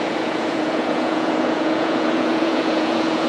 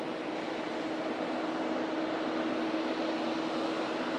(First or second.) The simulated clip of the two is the first